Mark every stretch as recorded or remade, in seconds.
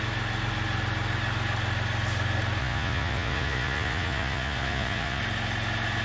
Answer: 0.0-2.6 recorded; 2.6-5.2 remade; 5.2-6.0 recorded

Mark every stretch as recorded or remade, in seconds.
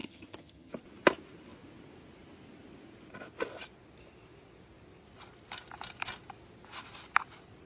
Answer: 0.0-0.7 remade; 0.7-7.7 recorded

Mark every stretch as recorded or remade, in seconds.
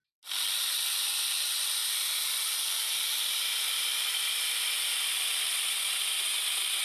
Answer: 0.0-1.8 recorded; 1.8-5.9 remade; 5.9-6.8 recorded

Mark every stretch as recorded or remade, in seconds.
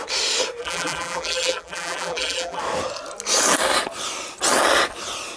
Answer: 0.0-0.6 recorded; 0.6-2.6 remade; 2.6-5.4 recorded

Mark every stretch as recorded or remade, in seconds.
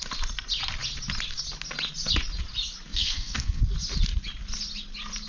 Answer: 0.0-2.9 recorded; 2.9-3.6 remade; 3.6-5.3 recorded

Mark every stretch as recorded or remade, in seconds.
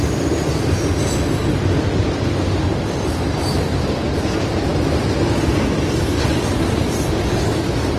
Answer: 0.0-8.0 recorded